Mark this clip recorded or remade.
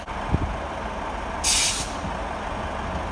recorded